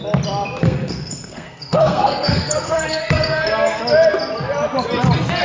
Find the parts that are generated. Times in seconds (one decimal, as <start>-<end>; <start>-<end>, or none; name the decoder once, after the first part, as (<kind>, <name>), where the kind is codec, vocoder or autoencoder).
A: 0.6-3.8 (codec, SNAC)